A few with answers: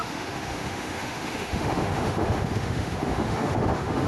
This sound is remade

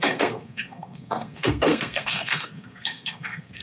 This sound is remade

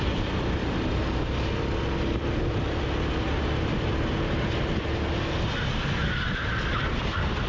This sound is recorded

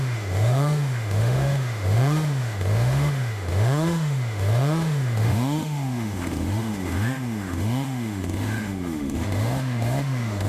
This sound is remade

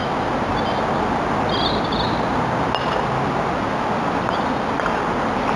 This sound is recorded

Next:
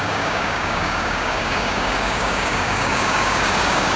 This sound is remade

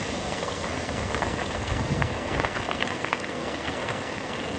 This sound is remade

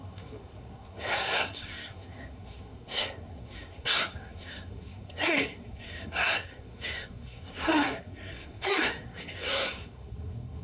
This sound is remade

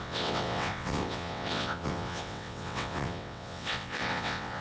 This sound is remade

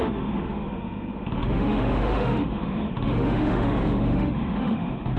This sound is remade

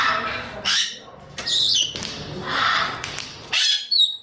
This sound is remade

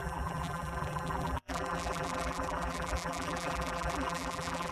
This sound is remade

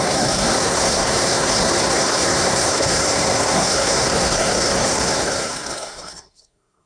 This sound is remade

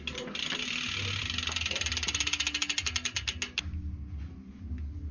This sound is recorded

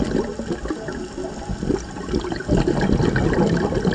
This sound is recorded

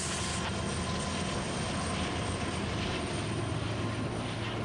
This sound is recorded